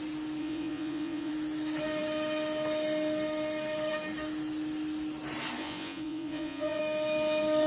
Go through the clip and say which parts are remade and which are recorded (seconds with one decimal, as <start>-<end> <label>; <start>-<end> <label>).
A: 0.0-0.4 recorded; 0.4-1.3 remade; 1.3-5.6 recorded; 5.6-6.8 remade; 6.8-7.7 recorded